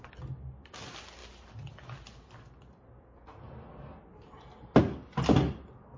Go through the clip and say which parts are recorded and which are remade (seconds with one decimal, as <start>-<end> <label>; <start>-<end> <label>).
0.0-6.0 recorded